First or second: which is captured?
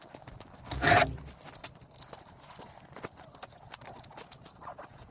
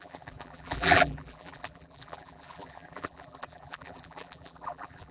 first